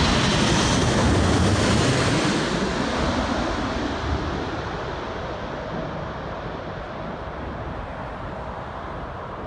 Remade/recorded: recorded